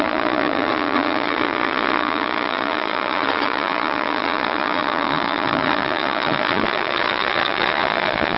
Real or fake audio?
fake